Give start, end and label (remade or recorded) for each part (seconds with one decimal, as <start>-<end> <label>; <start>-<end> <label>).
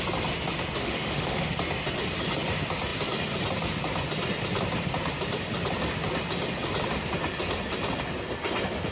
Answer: 0.0-0.8 recorded; 0.8-1.5 remade; 1.5-8.9 recorded